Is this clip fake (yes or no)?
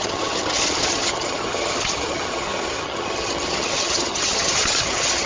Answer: yes